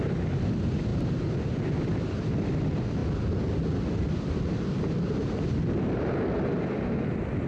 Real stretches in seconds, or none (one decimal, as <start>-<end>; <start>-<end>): 0.0-7.5